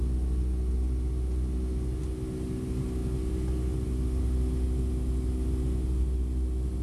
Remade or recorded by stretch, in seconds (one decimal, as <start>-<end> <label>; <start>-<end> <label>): 0.0-6.8 recorded